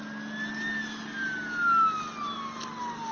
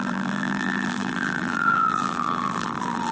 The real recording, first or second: first